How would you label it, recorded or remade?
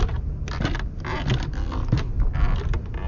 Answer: recorded